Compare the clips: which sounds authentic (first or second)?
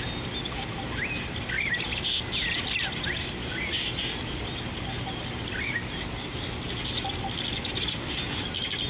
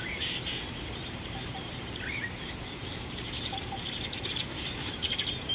first